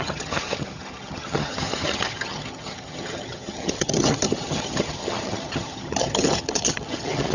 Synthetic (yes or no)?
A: yes